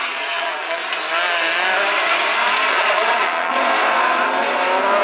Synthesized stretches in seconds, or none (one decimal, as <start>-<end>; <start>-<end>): 0.0-0.8; 2.7-3.7